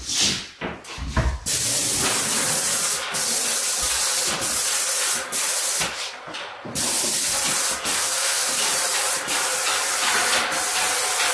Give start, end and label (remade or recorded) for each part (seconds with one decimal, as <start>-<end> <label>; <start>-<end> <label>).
0.0-7.9 recorded; 7.9-8.4 remade; 8.4-11.3 recorded